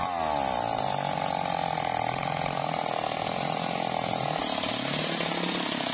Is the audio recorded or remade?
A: recorded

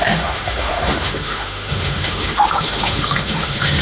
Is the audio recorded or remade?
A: remade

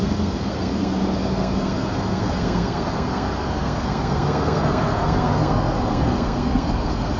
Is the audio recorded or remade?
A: remade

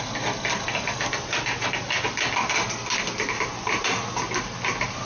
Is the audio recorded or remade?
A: recorded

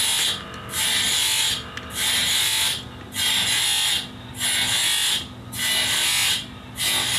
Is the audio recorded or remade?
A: recorded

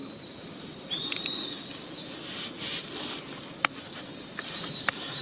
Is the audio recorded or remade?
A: recorded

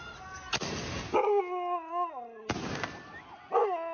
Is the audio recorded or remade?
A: recorded